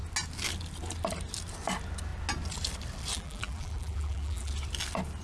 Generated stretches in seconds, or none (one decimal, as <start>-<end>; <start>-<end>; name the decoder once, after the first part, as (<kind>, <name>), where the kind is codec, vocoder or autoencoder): 3.1-4.5 (vocoder, BigVGAN v2)